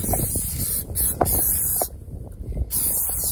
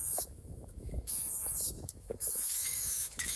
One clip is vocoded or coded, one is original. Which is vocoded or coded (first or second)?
second